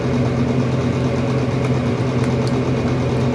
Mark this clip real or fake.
real